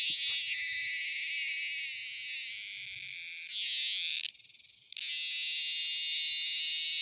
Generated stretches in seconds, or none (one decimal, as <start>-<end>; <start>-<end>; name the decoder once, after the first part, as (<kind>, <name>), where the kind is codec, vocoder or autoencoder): none